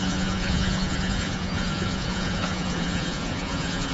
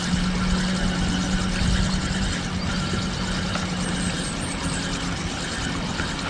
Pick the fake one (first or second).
first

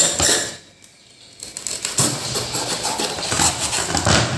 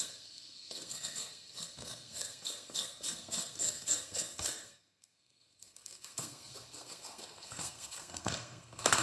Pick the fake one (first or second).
second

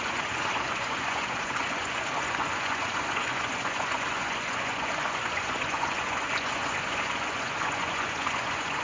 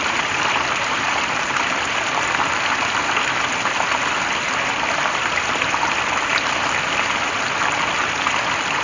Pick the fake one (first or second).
first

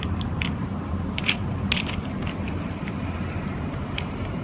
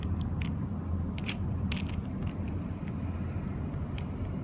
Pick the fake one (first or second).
first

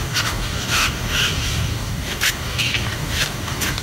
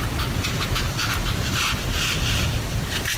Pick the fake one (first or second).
first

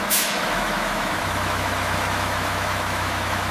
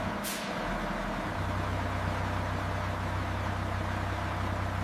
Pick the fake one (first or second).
first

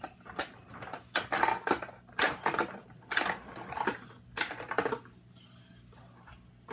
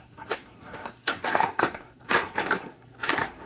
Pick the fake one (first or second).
second